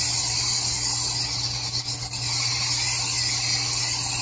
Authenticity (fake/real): real